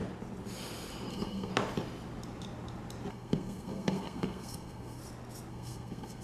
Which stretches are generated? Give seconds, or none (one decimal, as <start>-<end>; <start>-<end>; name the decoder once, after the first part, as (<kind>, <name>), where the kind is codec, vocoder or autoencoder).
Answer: 1.1-1.5 (codec, SNAC); 3.1-5.0; 5.5-6.2